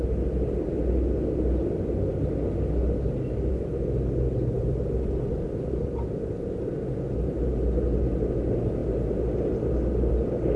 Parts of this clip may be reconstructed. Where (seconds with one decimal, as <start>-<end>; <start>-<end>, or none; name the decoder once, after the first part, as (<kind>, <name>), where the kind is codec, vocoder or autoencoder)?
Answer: 4.6-5.8 (vocoder, BigVGAN v2)